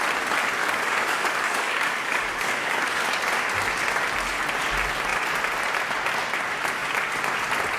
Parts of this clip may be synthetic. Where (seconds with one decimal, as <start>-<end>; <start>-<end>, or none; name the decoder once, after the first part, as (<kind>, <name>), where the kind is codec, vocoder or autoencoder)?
0.6-3.2 (codec, DAC)